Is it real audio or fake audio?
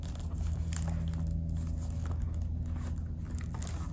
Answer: real